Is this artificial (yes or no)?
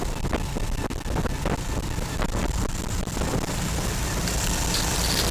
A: no